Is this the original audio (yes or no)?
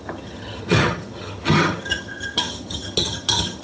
no